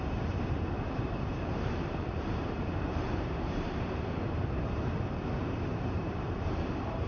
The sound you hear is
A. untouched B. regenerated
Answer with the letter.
B